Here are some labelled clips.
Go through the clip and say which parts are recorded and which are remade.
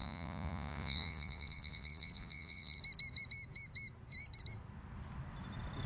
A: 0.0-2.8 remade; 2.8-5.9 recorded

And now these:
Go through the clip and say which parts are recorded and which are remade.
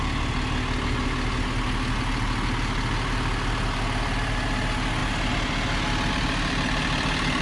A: 0.0-7.4 recorded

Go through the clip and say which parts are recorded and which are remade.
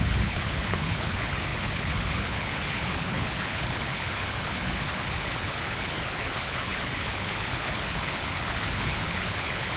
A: 0.0-9.8 remade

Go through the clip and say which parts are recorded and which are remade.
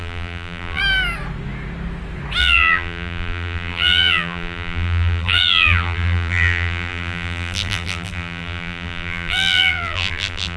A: 0.0-0.8 remade; 0.8-2.4 recorded; 2.4-10.6 remade